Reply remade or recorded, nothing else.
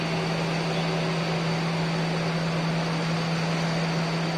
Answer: recorded